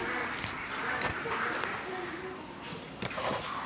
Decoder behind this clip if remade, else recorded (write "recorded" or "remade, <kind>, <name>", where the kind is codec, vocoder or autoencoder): recorded